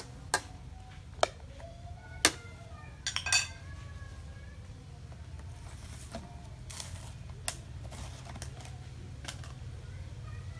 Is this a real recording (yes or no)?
yes